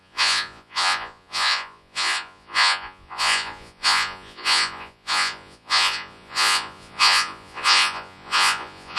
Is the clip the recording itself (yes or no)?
no